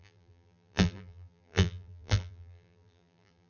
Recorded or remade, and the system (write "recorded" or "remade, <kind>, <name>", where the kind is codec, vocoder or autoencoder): remade, vocoder, BigVGAN v2